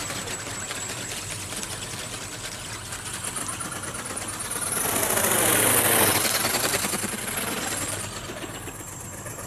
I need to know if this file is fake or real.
real